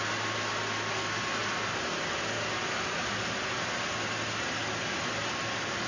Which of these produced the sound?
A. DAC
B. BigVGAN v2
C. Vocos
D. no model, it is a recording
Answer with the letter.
D